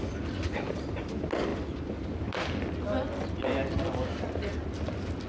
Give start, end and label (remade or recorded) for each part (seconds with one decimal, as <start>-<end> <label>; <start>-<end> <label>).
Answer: 0.0-5.3 recorded